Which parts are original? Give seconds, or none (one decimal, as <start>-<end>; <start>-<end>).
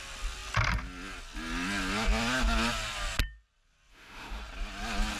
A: 0.0-3.9; 4.4-5.2